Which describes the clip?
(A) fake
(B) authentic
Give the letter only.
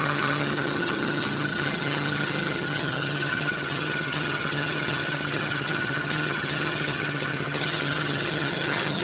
A